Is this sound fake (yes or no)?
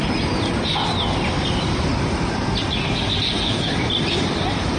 no